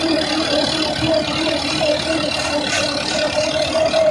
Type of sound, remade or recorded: recorded